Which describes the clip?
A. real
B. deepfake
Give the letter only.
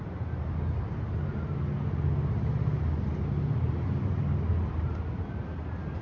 A